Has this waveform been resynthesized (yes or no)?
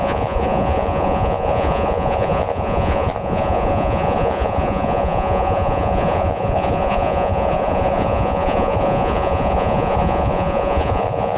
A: yes